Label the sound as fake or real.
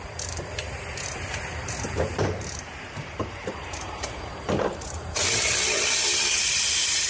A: fake